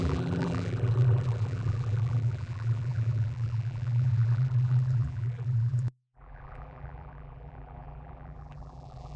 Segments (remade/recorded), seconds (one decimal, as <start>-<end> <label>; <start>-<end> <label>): 0.0-9.2 remade